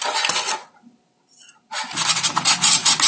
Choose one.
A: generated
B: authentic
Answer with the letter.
B